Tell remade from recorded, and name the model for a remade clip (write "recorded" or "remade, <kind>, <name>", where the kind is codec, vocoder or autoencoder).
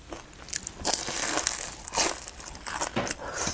recorded